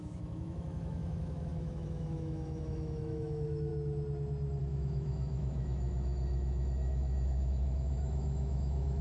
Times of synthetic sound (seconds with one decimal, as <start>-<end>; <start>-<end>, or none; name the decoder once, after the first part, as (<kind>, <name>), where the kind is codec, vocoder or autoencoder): 0.0-3.7 (autoencoder, DAC-VAE); 4.6-9.0